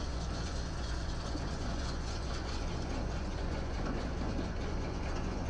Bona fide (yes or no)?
no